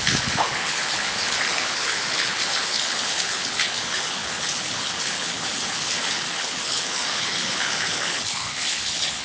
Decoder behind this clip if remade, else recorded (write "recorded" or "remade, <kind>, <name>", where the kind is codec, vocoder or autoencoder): remade, codec, HILCodec